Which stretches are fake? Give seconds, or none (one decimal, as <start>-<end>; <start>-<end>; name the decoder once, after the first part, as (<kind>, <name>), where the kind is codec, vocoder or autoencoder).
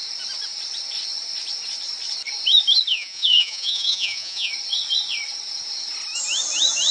2.9-4.5 (vocoder, Vocos)